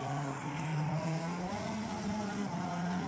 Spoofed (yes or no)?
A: yes